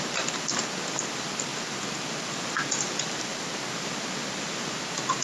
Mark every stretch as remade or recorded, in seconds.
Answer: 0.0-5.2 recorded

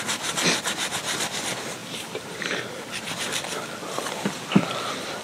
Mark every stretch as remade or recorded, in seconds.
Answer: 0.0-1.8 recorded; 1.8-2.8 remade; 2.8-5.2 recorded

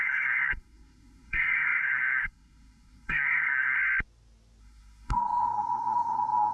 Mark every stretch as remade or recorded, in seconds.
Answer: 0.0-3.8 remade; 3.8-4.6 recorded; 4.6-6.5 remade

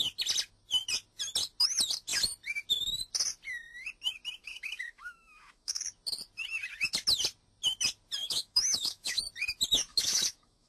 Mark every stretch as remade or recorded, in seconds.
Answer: 0.0-4.4 recorded; 4.4-5.8 remade; 5.8-8.2 recorded; 8.2-9.2 remade; 9.2-9.9 recorded; 9.9-10.7 remade

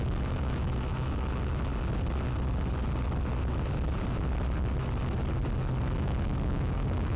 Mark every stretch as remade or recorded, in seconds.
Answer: 0.0-1.7 remade; 1.7-6.0 recorded; 6.0-7.2 remade